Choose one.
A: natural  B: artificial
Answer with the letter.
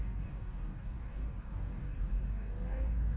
B